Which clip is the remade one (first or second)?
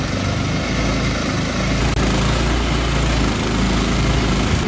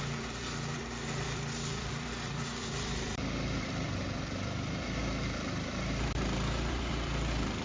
second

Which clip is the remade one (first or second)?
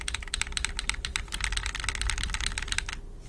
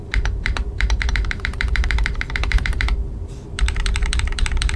second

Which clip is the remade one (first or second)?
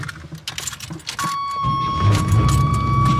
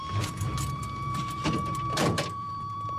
second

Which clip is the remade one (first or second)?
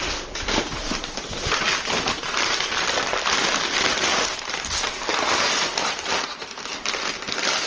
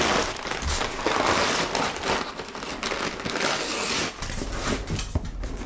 first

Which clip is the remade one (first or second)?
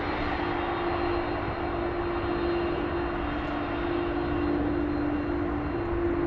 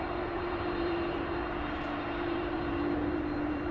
second